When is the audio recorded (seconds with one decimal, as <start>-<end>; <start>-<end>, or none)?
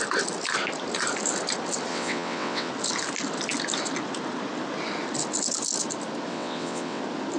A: 0.0-1.9; 2.7-6.3; 7.0-7.4